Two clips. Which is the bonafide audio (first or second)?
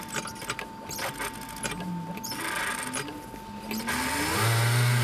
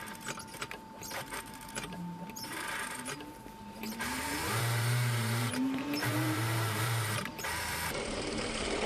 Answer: first